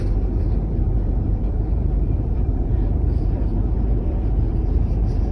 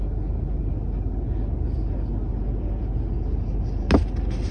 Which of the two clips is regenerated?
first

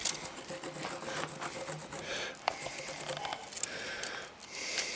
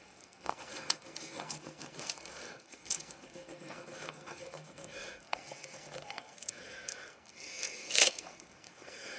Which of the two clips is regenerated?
second